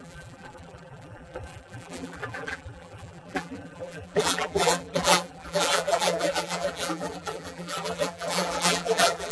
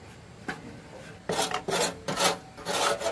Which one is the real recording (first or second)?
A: second